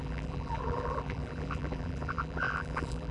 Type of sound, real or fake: fake